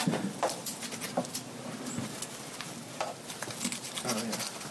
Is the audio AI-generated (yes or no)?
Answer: no